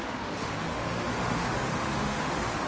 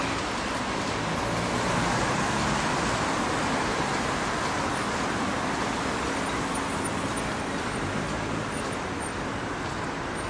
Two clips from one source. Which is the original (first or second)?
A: second